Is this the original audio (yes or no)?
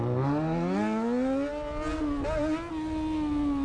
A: yes